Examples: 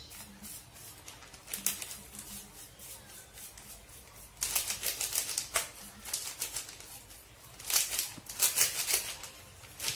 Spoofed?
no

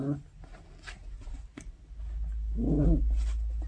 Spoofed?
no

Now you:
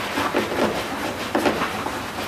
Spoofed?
no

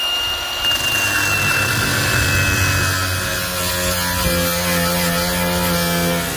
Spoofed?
no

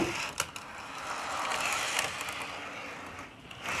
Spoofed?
no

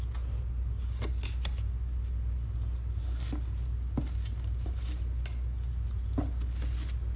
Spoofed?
no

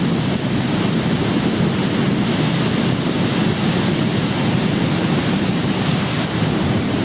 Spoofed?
no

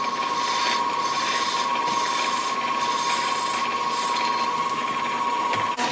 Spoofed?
yes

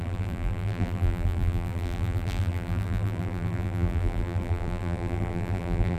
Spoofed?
yes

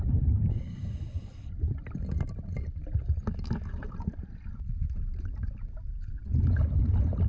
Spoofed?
no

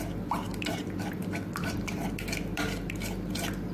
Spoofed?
yes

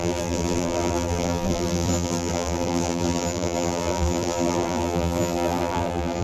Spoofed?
yes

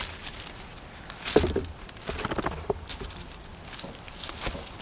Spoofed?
yes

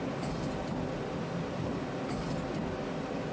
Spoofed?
no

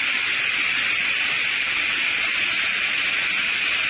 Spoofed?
no